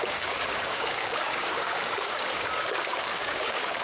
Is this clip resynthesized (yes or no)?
yes